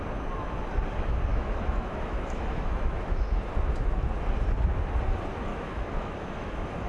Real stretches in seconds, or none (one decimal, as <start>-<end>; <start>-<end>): 0.0-1.3; 3.3-5.5